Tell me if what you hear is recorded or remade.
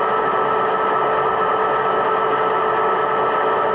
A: recorded